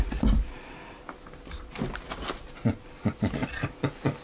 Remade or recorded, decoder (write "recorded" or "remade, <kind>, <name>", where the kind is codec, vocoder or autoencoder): recorded